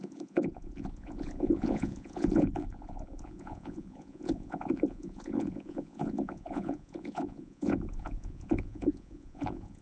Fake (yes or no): yes